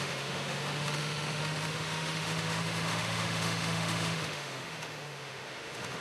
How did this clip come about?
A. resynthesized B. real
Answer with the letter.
A